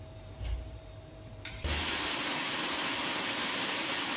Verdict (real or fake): fake